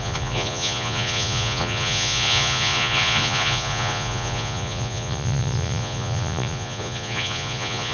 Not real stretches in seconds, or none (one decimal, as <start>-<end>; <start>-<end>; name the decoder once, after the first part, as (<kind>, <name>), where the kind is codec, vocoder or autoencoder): 0.0-7.9 (vocoder, Vocos)